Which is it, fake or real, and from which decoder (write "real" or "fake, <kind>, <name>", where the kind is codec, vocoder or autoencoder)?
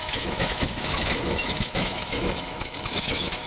fake, autoencoder, DAC-VAE